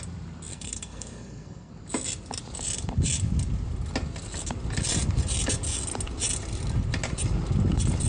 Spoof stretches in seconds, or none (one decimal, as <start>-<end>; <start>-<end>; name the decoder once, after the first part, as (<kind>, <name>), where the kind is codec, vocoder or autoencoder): 0.5-1.7 (codec, SNAC)